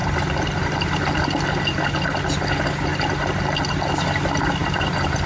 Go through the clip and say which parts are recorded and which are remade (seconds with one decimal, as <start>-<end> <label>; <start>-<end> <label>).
0.0-4.6 recorded; 4.6-5.3 remade